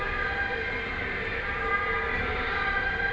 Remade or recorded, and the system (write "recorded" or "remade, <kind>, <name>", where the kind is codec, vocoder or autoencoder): remade, vocoder, BigVGAN v2